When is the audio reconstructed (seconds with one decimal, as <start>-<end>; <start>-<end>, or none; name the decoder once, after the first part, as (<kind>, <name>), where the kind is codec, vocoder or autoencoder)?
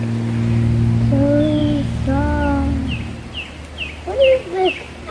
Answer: none